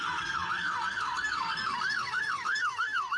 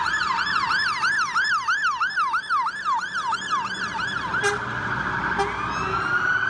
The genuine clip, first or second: second